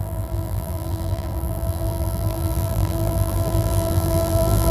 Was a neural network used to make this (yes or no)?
yes